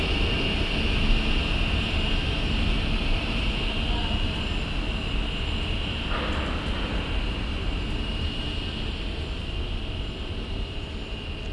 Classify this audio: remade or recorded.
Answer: recorded